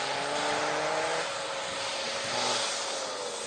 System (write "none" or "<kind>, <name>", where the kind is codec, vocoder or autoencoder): none